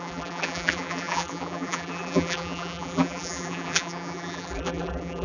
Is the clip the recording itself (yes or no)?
no